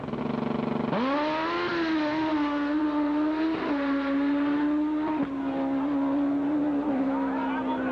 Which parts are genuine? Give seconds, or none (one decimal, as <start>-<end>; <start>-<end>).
0.0-7.9